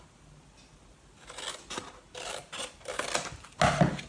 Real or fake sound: real